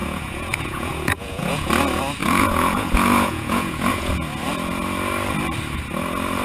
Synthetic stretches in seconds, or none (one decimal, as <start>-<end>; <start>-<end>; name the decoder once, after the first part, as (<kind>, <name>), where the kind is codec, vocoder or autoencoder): 0.0-1.7 (vocoder, Vocos); 2.2-4.1